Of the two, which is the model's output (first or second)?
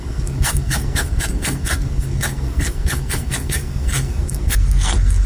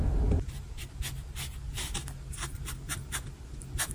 first